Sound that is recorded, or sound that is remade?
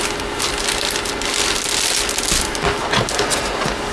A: recorded